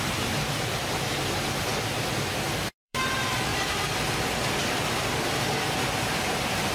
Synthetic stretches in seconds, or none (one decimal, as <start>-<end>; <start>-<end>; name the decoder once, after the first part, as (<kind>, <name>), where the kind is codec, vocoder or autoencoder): 0.0-1.7 (vocoder, BigVGAN v2); 2.3-3.5; 4.7-6.7